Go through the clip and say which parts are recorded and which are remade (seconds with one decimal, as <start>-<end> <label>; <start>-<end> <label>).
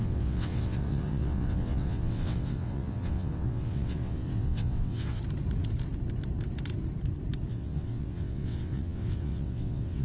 0.0-5.2 remade; 5.2-7.5 recorded; 7.5-10.0 remade